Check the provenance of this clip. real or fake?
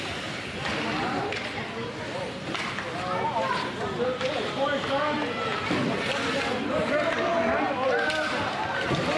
real